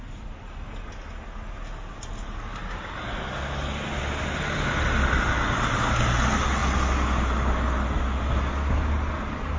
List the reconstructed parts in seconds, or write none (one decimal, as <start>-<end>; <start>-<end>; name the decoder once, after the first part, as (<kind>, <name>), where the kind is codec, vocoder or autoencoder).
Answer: none